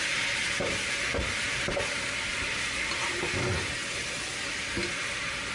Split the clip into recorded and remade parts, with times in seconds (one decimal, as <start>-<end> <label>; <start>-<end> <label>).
0.0-5.5 recorded